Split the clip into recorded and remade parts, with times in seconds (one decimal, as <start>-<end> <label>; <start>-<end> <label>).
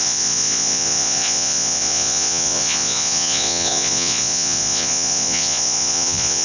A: 0.0-6.4 remade